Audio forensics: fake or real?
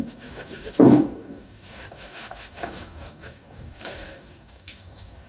fake